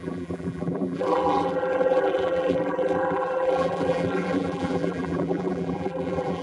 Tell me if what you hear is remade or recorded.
remade